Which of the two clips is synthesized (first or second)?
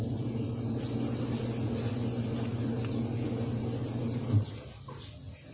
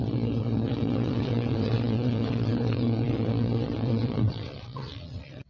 second